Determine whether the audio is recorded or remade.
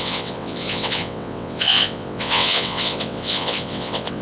remade